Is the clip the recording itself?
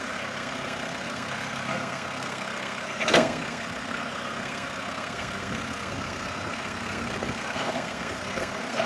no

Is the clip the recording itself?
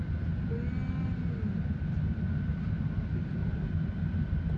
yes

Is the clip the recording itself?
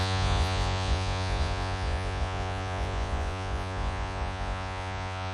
no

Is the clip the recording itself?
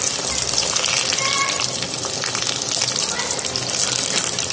yes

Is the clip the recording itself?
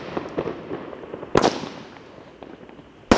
yes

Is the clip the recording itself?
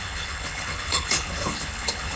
no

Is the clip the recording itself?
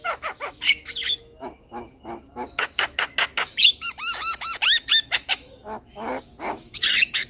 no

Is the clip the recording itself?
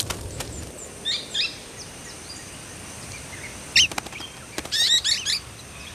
yes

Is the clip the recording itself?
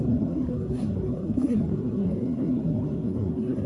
no